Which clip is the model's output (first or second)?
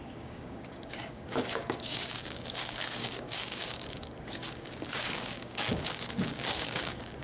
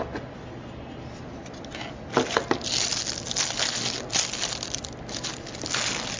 first